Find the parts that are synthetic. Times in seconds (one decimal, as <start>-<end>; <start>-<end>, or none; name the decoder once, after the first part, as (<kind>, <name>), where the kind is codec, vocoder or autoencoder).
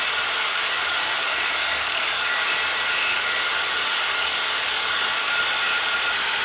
0.4-2.6 (codec, DAC); 3.1-5.4